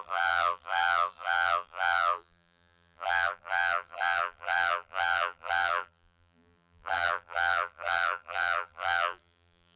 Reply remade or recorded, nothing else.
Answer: remade